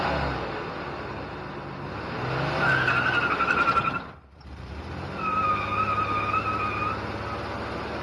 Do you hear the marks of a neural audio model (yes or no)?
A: no